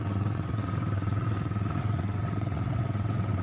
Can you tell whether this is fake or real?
fake